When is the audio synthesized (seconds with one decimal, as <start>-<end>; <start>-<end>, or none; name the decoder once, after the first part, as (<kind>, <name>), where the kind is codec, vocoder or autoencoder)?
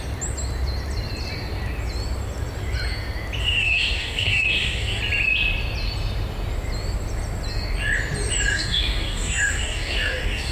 3.4-5.0 (codec, DAC); 8.5-10.5